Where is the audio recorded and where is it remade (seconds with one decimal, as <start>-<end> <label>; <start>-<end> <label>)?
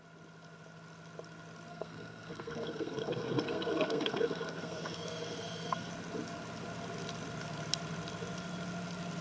0.0-1.7 recorded; 1.7-5.9 remade; 5.9-9.2 recorded